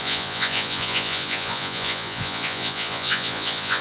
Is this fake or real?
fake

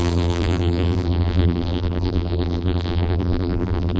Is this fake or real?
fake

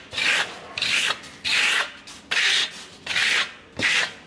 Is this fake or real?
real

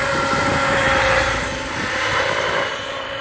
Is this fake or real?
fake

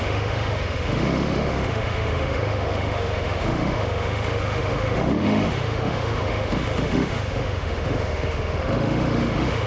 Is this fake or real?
fake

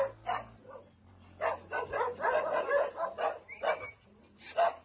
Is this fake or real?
real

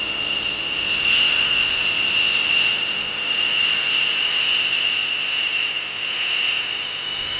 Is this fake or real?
real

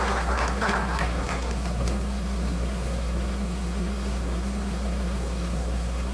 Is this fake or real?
fake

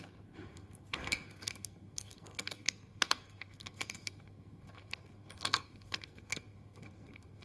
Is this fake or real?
fake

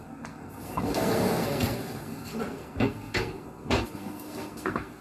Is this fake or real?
fake